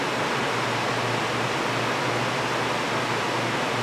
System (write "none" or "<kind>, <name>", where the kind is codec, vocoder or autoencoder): none